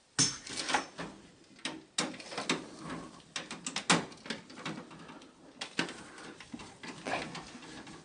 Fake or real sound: real